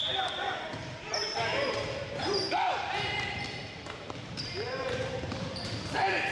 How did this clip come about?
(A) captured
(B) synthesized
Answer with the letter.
B